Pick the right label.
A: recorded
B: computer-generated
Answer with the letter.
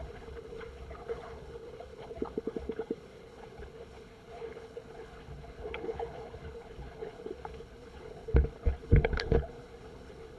B